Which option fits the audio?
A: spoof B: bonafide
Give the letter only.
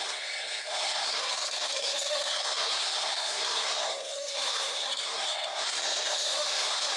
A